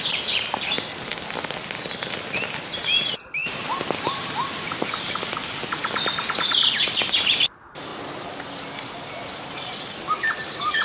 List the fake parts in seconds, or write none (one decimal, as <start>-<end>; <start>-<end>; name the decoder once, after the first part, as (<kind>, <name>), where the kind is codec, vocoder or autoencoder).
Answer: none